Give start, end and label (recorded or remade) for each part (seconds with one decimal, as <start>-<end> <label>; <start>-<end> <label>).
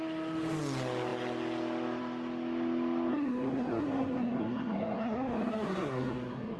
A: 0.0-3.1 recorded; 3.1-6.6 remade